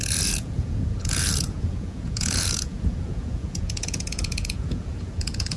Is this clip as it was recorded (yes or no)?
no